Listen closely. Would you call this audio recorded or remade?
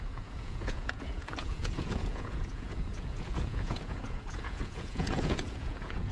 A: remade